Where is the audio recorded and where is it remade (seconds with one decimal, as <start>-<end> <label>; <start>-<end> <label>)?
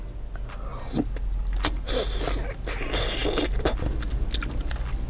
0.0-5.1 recorded